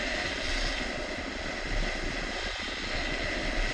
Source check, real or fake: real